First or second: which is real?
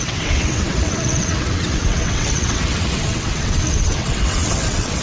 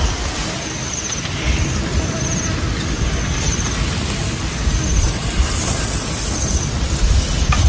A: second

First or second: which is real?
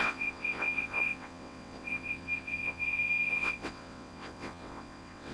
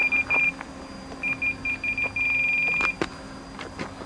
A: second